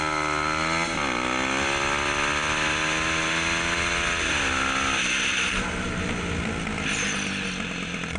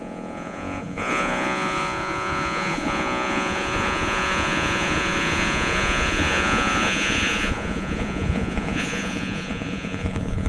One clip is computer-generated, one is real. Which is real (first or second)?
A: first